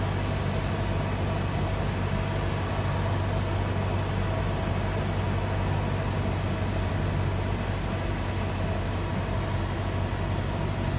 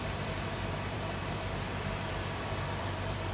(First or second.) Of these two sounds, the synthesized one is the second